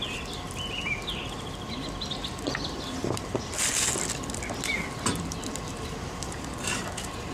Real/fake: real